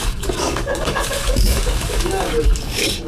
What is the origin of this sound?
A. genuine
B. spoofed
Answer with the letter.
B